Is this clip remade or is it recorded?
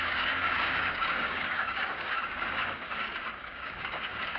remade